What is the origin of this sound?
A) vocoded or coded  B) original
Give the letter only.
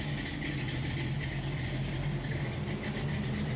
B